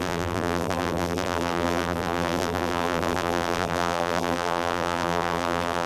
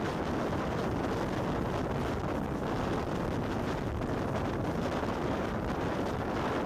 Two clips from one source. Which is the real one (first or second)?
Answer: second